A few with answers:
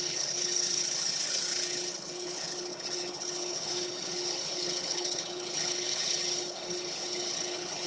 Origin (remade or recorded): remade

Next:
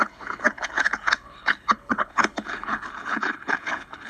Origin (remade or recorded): remade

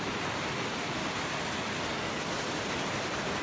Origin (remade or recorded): recorded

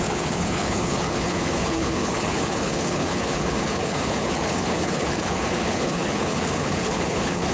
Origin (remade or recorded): remade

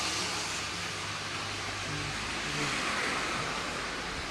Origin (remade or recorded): recorded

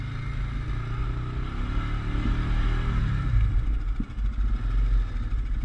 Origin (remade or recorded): recorded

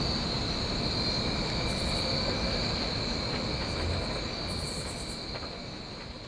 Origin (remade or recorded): recorded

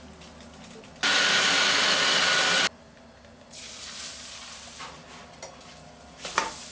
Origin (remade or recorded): recorded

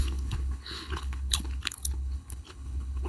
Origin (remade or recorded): remade